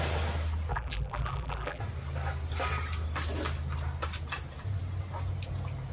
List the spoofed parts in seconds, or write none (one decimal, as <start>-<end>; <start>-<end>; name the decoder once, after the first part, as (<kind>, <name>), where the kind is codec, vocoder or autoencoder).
0.7-1.8 (vocoder, BigVGAN v2)